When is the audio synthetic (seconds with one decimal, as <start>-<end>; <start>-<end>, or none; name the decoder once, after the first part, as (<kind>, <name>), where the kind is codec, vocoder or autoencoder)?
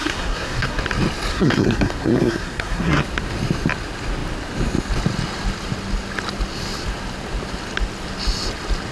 0.0-0.8 (codec, SNAC); 1.3-3.0